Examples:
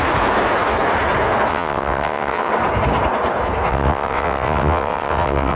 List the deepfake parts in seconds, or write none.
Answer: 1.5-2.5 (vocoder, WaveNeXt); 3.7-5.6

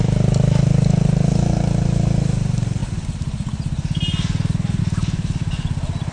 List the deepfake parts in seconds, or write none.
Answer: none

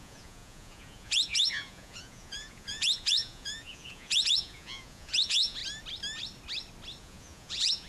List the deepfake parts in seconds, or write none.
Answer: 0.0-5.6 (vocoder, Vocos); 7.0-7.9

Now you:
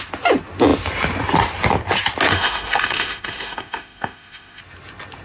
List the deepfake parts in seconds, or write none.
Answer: 2.3-4.6 (autoencoder, DAC-VAE)

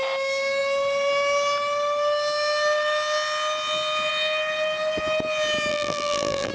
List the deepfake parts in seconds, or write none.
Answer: 5.7-6.5 (vocoder, BigVGAN v2)

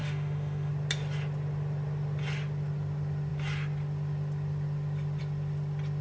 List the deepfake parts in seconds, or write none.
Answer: 0.0-0.7 (autoencoder, DAC-VAE)

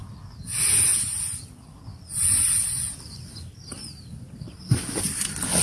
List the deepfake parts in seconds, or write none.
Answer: none

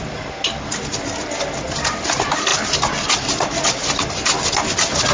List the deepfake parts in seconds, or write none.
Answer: none